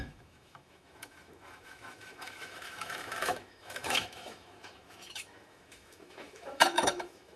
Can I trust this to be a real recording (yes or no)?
no